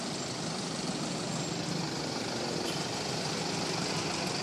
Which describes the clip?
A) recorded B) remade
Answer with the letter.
A